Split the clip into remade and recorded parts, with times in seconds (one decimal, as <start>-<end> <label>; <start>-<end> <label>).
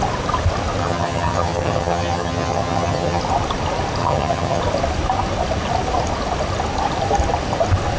0.0-0.8 recorded; 0.8-3.2 remade; 3.2-4.0 recorded; 4.0-4.6 remade; 4.6-8.0 recorded